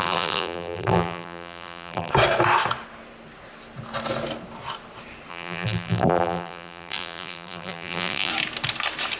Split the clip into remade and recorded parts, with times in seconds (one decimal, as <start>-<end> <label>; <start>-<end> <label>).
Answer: 0.0-2.1 remade; 2.1-5.3 recorded; 5.3-8.3 remade; 8.3-9.2 recorded